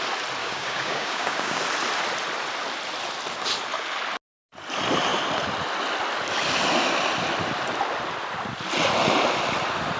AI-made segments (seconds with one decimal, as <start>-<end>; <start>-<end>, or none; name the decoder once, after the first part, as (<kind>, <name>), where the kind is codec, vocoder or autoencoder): 0.4-1.6 (codec, DAC)